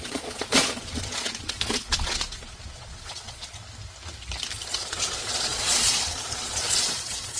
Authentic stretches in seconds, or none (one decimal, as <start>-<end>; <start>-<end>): 3.6-4.7